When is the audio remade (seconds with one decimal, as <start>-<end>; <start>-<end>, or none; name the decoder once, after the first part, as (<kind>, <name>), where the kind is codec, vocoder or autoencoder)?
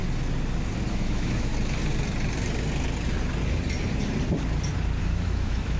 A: 0.9-1.5 (autoencoder, DAC-VAE); 5.0-5.8